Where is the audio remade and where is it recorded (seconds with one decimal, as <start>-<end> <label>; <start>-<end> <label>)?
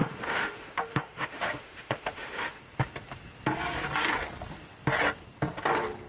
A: 0.0-2.6 remade; 2.6-6.1 recorded